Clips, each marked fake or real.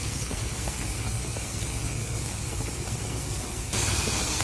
fake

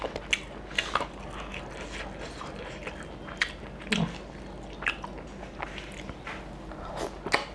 real